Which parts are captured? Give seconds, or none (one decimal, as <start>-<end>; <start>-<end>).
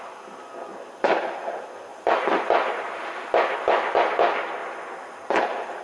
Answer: 0.0-1.9; 4.1-4.6